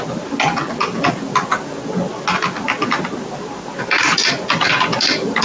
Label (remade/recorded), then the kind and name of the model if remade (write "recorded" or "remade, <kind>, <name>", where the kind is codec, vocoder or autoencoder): recorded